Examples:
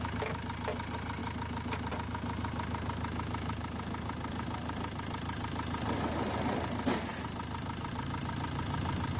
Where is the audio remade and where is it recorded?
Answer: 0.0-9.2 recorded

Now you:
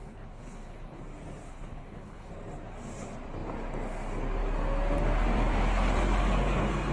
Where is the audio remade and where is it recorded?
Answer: 0.0-1.0 remade; 1.0-1.5 recorded; 1.5-2.3 remade; 2.3-6.9 recorded

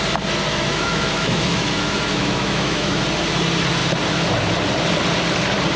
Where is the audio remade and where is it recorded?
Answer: 0.0-0.5 recorded; 0.5-3.0 remade; 3.0-5.8 recorded

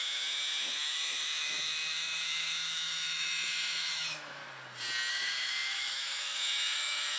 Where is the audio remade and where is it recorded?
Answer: 0.0-4.4 remade; 4.4-5.1 recorded; 5.1-7.2 remade

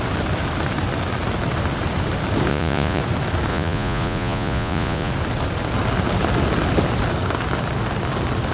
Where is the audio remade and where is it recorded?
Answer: 0.0-2.5 recorded; 2.5-3.0 remade; 3.0-3.5 recorded; 3.5-5.1 remade; 5.1-8.5 recorded

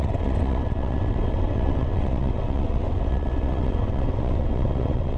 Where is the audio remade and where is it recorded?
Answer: 0.0-5.2 remade

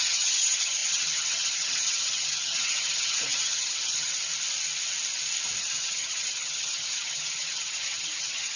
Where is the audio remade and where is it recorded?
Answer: 0.0-4.3 remade; 4.3-5.6 recorded; 5.6-8.6 remade